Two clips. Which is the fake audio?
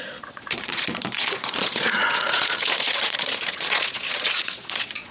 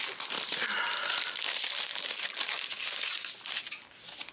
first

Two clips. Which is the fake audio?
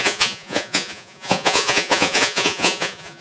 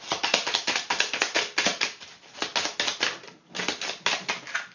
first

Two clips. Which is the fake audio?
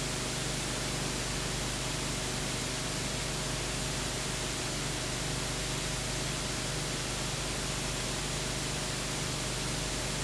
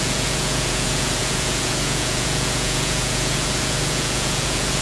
second